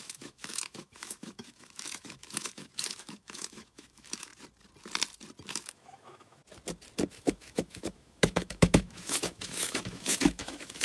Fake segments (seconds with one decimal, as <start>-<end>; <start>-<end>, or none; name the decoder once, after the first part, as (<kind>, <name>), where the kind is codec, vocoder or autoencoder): 0.0-4.3 (autoencoder, DAC-VAE); 5.5-6.4; 7.1-10.8